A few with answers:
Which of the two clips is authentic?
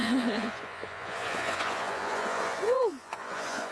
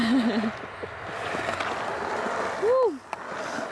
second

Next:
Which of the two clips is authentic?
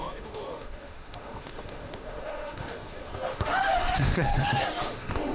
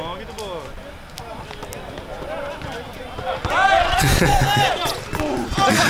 second